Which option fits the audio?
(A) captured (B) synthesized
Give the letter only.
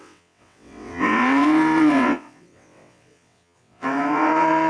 B